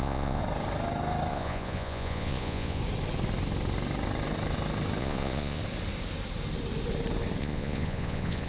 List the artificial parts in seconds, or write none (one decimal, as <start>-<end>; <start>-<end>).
0.0-0.4; 1.3-2.8; 5.0-5.6; 7.4-8.5